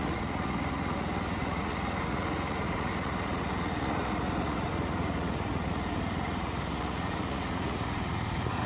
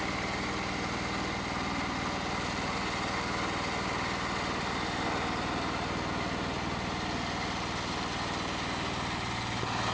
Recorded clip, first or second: second